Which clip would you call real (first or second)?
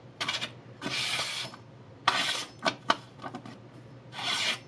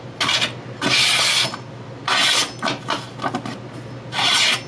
second